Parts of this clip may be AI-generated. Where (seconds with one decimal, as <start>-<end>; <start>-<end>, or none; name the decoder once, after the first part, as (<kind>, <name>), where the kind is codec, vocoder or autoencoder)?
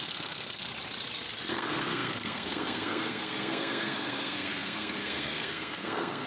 0.0-0.7 (codec, SNAC); 1.5-6.3